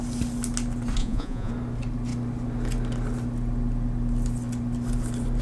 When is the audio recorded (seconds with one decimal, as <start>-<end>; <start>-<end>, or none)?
0.0-1.0; 1.5-5.4